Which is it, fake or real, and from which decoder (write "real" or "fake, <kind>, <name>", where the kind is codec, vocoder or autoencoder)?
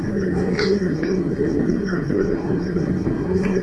fake, codec, SNAC